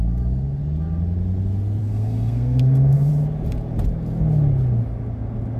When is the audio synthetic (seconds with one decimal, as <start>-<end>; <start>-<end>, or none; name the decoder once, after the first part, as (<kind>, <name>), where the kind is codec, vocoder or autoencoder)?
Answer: 1.8-3.1 (codec, SNAC)